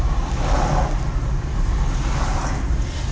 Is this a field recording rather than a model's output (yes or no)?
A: yes